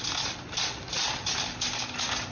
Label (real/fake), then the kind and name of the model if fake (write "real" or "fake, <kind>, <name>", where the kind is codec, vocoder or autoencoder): real